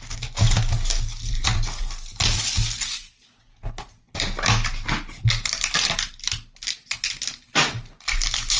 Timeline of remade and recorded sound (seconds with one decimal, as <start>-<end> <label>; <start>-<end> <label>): 0.0-8.6 recorded